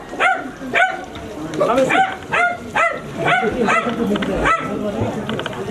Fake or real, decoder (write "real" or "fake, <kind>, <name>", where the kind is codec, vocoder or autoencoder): real